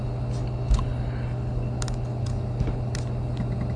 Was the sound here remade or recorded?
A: recorded